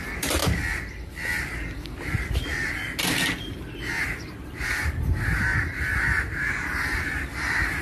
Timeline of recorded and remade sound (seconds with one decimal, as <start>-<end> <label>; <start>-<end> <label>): 0.0-0.4 remade; 0.4-4.0 recorded; 4.0-7.8 remade